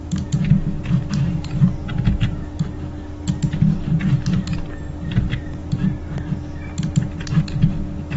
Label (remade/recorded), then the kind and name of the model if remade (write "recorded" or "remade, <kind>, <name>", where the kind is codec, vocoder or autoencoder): recorded